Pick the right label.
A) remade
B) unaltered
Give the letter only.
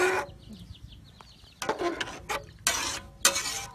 B